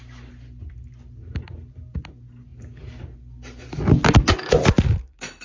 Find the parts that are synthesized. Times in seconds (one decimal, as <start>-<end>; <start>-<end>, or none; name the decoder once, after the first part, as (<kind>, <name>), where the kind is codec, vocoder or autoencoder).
none